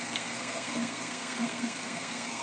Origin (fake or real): fake